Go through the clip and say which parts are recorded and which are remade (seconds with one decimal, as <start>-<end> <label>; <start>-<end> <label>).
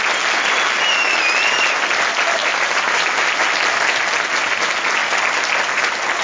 0.0-6.2 recorded